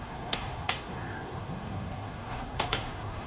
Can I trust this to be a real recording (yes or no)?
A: no